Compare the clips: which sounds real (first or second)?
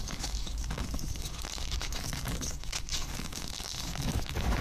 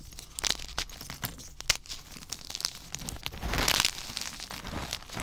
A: second